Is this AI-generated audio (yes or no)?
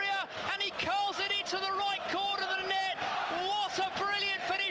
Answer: no